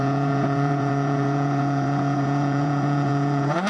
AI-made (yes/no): yes